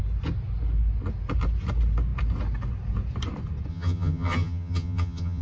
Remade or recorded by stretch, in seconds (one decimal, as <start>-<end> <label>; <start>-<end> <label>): 0.0-3.7 recorded; 3.7-5.4 remade